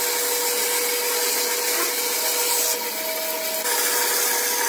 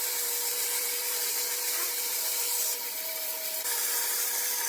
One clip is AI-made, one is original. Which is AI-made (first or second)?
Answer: second